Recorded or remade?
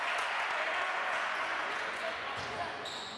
remade